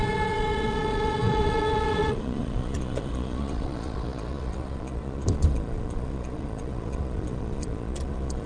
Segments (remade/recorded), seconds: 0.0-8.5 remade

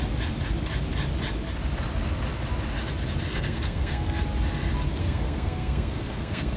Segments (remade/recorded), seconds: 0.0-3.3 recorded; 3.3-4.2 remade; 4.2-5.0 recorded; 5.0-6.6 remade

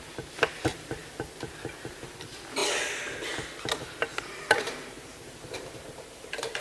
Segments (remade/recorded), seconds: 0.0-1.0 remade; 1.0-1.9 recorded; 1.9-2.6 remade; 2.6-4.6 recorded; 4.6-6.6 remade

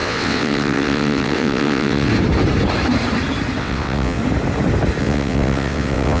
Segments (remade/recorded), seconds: 0.0-2.1 remade; 2.1-3.6 recorded; 3.6-4.2 remade; 4.2-5.0 recorded; 5.0-6.2 remade

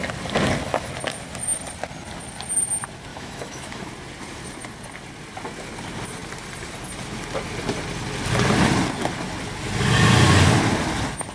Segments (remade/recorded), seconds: 0.0-3.1 recorded; 3.1-3.9 remade; 3.9-11.3 recorded